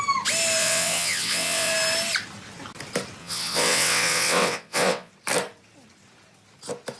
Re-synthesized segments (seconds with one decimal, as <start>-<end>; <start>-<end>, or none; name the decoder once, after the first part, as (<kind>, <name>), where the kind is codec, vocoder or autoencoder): 0.6-1.7 (vocoder, WaveNeXt); 3.2-5.1